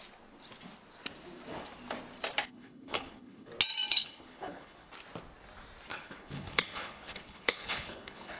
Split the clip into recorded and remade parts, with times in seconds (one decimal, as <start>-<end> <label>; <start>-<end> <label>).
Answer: 0.0-2.5 recorded; 2.5-3.5 remade; 3.5-3.9 recorded; 3.9-4.9 remade; 4.9-5.9 recorded; 5.9-8.4 remade